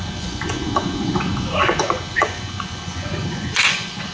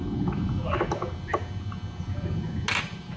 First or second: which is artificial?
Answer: first